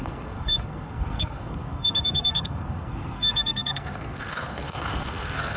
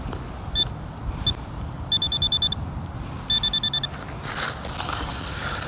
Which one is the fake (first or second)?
first